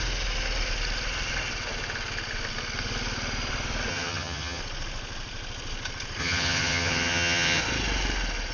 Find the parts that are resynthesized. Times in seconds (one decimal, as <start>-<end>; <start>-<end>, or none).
3.9-4.6; 6.2-7.6